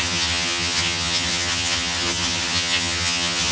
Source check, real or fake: fake